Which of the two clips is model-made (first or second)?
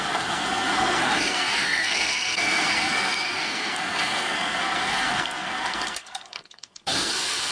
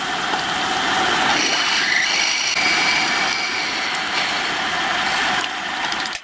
first